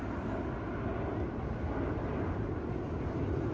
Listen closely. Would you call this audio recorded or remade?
recorded